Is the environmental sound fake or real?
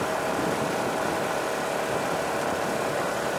real